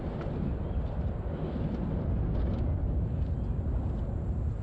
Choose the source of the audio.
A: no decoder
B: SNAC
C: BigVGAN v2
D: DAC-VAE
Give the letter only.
A